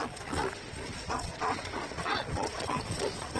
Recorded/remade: remade